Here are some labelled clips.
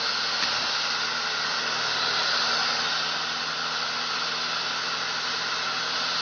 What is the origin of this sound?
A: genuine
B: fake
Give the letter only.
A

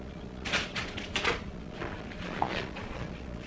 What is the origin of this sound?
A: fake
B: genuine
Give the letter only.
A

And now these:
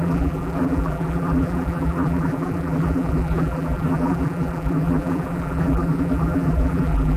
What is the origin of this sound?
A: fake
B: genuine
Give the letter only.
A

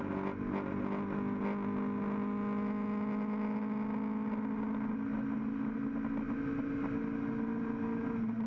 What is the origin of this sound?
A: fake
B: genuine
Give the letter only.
B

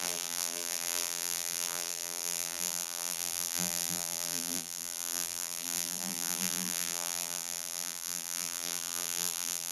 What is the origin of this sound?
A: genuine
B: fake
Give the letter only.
B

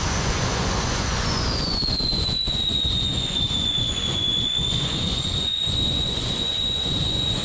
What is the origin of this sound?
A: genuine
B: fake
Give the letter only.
B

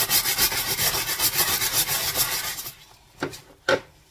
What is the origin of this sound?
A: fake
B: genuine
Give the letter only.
B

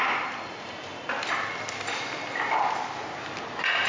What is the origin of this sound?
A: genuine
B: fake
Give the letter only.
A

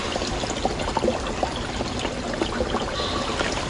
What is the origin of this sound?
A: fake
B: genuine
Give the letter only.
B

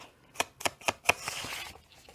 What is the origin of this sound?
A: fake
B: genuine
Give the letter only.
B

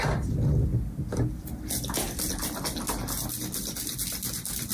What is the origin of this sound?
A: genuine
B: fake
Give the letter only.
A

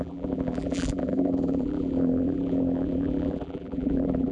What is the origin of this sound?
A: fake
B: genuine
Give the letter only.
A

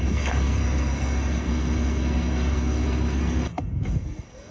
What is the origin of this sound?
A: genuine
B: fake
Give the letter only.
B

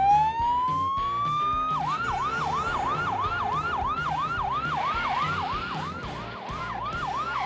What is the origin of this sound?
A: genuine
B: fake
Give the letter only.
A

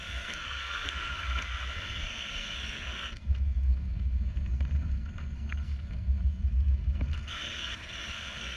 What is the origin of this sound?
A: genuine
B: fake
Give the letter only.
B